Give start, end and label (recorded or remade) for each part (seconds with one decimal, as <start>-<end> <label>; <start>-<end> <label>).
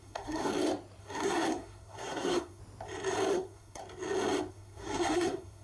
0.0-0.5 remade; 0.5-1.0 recorded; 1.0-2.6 remade; 2.6-3.3 recorded; 3.3-3.8 remade; 3.8-4.5 recorded; 4.5-5.6 remade